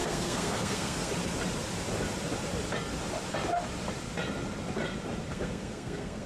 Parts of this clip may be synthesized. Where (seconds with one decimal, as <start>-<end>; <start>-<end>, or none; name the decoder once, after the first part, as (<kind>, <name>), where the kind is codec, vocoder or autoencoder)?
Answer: 0.0-1.1 (codec, SNAC); 5.3-6.3

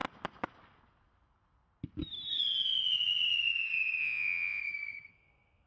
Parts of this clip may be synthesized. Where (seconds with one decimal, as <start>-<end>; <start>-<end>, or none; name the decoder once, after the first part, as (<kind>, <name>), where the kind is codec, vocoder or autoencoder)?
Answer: 4.0-4.6 (vocoder, Vocos)

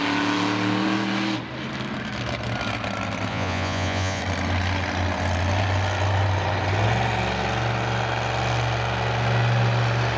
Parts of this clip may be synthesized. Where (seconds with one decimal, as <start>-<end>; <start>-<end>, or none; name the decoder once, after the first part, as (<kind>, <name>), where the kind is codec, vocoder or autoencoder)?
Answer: 3.3-4.2 (vocoder, Vocos)

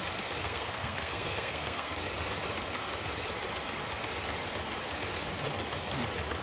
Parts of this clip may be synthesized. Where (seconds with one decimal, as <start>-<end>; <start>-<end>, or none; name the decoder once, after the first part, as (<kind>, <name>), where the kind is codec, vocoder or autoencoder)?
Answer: 0.4-2.0 (codec, SNAC)

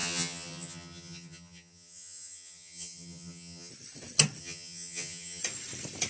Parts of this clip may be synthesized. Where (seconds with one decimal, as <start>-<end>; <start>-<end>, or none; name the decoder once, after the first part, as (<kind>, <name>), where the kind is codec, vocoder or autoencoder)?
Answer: 0.0-3.7 (vocoder, HiFi-GAN); 4.4-5.4

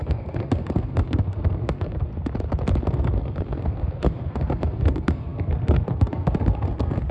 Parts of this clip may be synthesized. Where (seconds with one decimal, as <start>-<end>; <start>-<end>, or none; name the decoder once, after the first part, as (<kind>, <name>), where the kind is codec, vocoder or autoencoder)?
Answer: 0.0-2.1 (codec, SNAC); 2.9-7.1

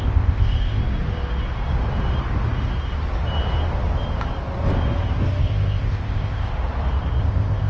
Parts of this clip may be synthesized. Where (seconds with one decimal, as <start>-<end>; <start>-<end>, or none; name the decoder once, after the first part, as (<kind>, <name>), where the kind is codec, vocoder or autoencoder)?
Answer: 0.0-0.8 (codec, ZipCodec); 5.4-6.5; 7.2-7.7

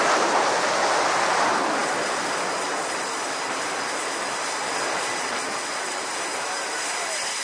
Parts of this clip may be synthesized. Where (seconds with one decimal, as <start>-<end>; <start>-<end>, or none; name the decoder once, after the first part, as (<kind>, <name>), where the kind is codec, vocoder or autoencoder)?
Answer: none